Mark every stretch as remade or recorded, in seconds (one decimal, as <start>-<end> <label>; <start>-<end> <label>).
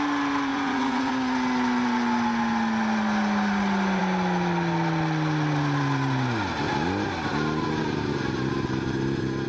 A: 0.0-0.5 recorded; 0.5-1.1 remade; 1.1-9.5 recorded